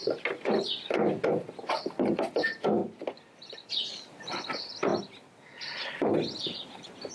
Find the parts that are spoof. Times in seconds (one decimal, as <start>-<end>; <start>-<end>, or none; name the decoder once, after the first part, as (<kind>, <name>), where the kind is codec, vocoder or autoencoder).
none